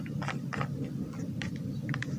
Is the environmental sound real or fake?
real